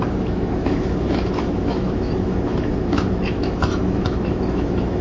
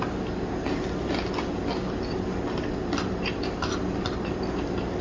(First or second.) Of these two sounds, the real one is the second